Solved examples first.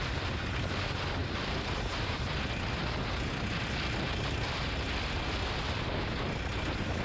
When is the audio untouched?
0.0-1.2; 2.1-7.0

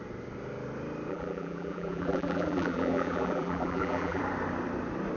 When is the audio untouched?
0.0-1.1; 4.2-5.2

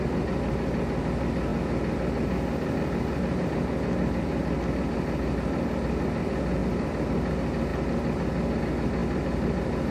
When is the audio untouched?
0.0-9.0